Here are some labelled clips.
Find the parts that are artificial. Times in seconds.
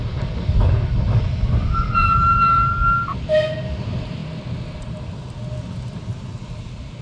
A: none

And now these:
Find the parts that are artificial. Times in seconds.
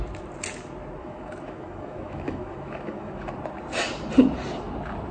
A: 1.0-3.3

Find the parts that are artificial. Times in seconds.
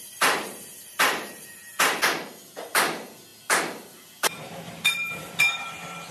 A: 0.0-6.1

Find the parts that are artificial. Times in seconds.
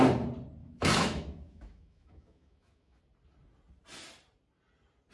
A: 0.6-3.0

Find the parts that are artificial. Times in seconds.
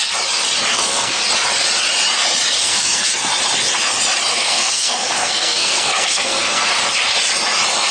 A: 0.7-1.2; 2.6-3.1; 4.3-6.7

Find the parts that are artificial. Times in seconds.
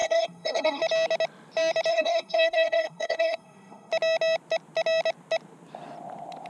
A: 0.0-0.8; 1.9-3.9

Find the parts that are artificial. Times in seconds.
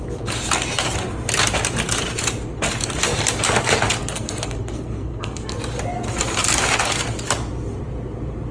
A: 4.0-5.6